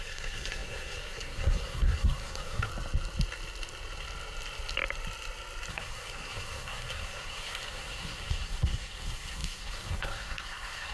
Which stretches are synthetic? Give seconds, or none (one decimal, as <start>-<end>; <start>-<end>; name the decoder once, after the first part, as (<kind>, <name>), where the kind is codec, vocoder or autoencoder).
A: 0.0-2.7 (codec, SNAC); 5.7-10.9